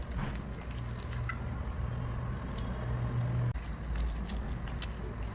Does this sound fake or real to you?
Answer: real